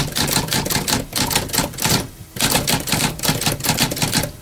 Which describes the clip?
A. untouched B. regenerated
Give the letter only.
A